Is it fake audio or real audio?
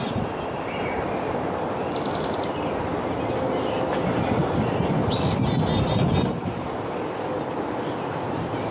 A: real